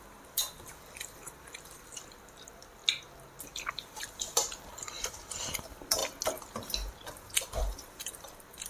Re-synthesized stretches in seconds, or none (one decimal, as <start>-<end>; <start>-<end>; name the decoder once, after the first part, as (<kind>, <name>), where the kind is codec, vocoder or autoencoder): 0.0-2.8 (vocoder, BigVGAN v2); 3.4-6.0; 6.9-8.7